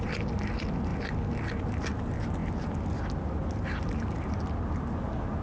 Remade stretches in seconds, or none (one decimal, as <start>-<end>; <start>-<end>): none